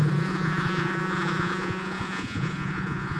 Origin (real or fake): fake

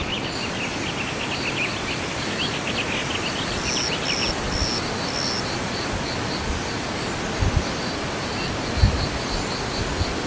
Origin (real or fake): real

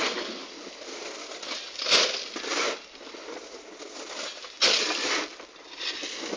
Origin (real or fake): real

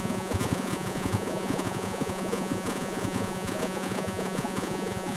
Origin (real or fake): fake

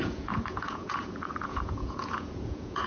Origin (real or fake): fake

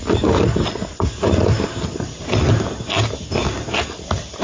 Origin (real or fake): real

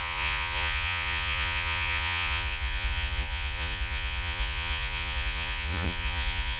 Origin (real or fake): fake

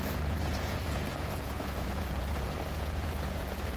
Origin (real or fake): fake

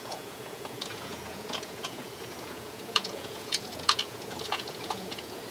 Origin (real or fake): fake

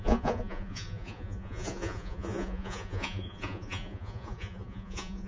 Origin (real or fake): fake